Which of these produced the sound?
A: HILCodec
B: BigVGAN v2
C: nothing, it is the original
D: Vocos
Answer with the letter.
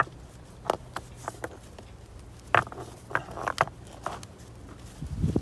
C